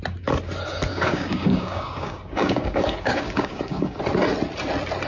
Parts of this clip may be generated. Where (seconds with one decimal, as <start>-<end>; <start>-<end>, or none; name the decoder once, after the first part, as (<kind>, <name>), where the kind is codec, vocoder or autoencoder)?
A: 0.9-4.0 (codec, DAC)